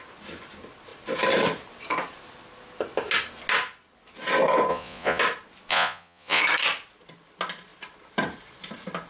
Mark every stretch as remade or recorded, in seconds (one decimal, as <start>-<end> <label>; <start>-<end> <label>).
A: 0.0-4.7 recorded; 4.7-5.2 remade; 5.2-5.7 recorded; 5.7-6.4 remade; 6.4-9.1 recorded